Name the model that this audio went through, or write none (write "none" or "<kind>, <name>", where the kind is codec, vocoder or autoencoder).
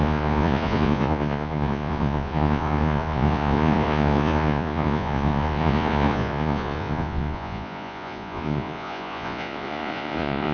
vocoder, Vocos